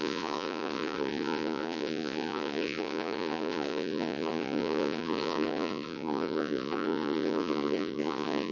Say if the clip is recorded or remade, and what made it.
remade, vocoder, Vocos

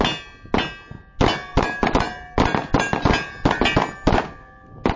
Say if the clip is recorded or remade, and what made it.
recorded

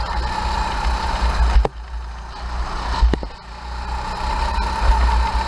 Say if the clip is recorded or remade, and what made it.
recorded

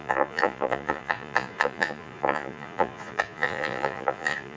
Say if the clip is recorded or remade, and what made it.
remade, vocoder, Vocos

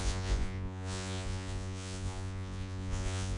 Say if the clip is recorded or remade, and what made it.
remade, vocoder, Vocos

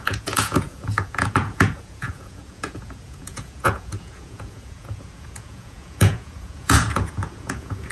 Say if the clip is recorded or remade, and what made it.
remade, vocoder, Vocos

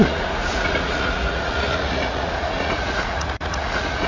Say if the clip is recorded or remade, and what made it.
remade, vocoder, Vocos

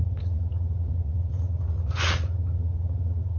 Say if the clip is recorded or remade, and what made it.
remade, vocoder, Vocos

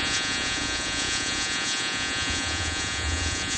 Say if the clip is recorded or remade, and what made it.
remade, vocoder, Vocos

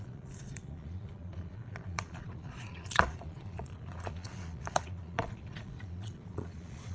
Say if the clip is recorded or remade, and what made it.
remade, vocoder, Vocos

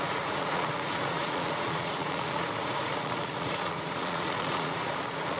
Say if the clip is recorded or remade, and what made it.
remade, vocoder, Vocos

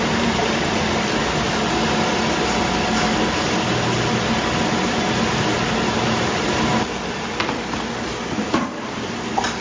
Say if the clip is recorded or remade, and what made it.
recorded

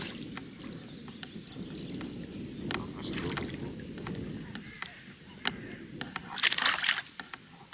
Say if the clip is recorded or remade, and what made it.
recorded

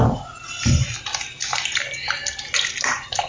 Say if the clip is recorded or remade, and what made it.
recorded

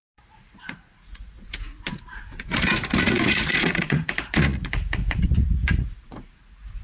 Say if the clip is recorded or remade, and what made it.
remade, vocoder, Vocos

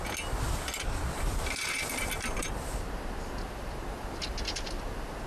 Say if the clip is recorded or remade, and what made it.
recorded